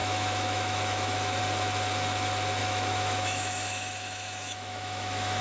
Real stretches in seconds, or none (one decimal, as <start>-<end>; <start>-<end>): 1.4-2.6